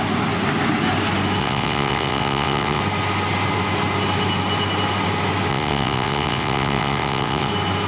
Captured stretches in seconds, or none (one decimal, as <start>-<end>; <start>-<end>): 0.0-1.4; 2.8-5.5; 7.5-7.9